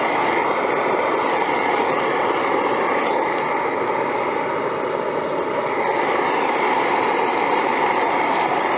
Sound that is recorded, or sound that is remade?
remade